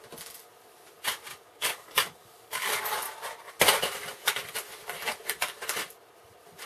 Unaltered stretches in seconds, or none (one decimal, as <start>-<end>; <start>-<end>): 0.0-1.3; 2.8-6.7